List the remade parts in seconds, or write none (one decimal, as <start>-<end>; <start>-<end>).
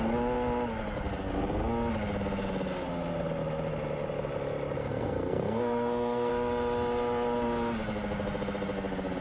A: 4.8-6.3